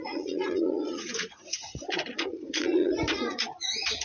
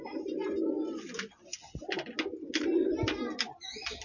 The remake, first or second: first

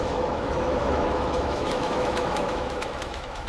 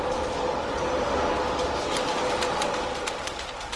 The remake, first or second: first